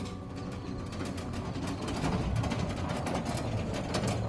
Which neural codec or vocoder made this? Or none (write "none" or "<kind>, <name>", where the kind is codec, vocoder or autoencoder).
none